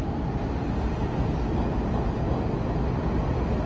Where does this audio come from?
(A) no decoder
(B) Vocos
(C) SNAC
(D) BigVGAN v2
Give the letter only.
A